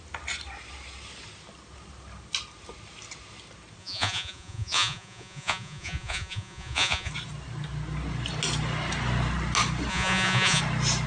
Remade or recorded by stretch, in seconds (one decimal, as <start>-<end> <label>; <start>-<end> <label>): 0.0-3.8 recorded; 3.8-7.1 remade; 7.1-9.9 recorded; 9.9-10.6 remade; 10.6-11.1 recorded